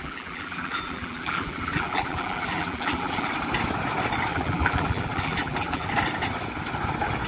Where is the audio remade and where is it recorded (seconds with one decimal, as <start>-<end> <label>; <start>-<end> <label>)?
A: 0.0-3.3 remade; 3.3-4.3 recorded; 4.3-5.9 remade; 5.9-7.3 recorded